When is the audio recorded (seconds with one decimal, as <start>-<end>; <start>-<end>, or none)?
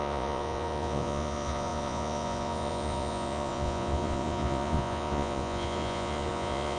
none